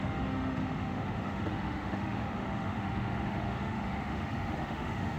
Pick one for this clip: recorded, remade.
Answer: remade